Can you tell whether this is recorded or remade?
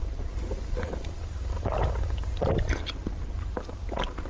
recorded